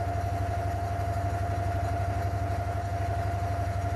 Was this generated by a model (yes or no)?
no